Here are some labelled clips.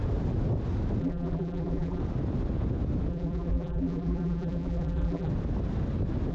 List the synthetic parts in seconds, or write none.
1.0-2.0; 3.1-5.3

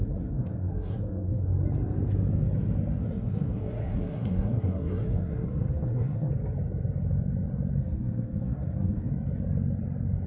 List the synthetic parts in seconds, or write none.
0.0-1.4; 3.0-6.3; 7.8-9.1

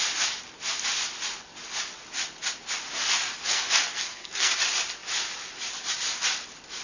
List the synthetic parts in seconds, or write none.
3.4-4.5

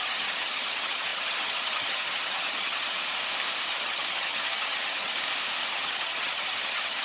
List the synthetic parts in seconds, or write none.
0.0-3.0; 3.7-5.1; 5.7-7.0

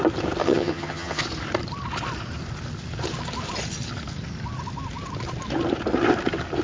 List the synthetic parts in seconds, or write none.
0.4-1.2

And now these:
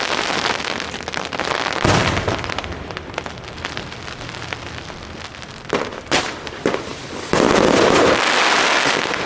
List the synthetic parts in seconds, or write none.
2.0-6.5